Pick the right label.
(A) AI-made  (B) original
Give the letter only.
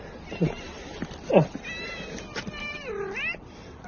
B